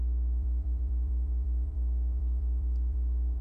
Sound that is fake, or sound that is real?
fake